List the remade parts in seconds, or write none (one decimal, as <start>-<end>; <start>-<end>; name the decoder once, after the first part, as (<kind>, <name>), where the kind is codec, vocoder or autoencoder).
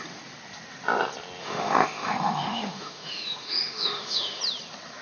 1.4-4.4 (autoencoder, DAC-VAE)